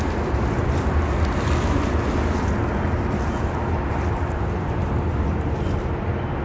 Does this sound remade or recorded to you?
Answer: recorded